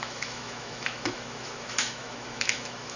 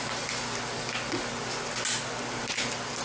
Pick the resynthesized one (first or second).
first